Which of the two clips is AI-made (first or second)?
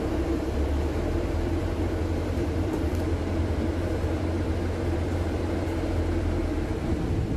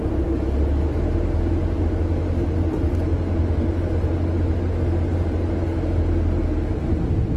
first